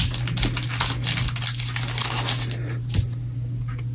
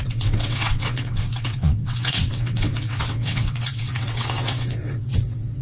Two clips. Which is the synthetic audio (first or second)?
second